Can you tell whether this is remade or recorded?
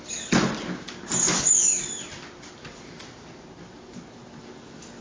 recorded